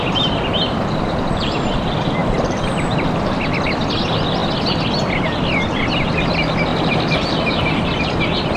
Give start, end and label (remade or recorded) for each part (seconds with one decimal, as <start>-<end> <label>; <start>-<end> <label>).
0.0-0.5 recorded; 0.5-1.8 remade; 1.8-2.2 recorded; 2.2-3.4 remade; 3.4-8.6 recorded